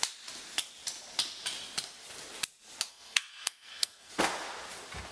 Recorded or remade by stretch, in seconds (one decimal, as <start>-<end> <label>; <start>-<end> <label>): 0.0-2.9 recorded; 2.9-4.1 remade; 4.1-5.1 recorded